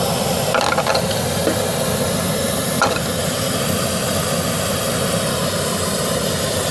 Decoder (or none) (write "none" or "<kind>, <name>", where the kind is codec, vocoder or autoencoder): none